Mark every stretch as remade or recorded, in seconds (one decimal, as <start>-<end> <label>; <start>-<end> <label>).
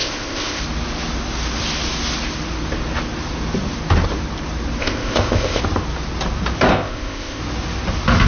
0.0-0.6 remade; 0.6-4.8 recorded; 4.8-5.6 remade; 5.6-6.7 recorded; 6.7-7.4 remade; 7.4-8.3 recorded